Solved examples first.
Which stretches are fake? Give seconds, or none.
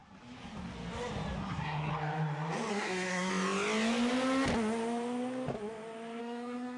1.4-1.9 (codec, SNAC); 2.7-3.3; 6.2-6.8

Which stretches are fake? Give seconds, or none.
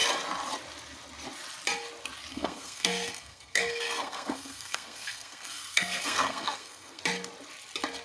2.3-7.0 (codec, SNAC)